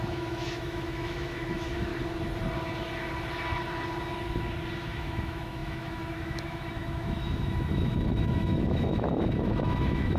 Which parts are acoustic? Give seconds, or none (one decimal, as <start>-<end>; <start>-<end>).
1.9-4.8